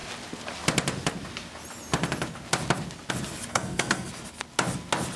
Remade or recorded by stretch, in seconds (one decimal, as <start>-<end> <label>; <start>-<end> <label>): 0.0-3.5 recorded; 3.5-4.1 remade; 4.1-5.2 recorded